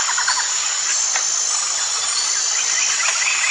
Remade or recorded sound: recorded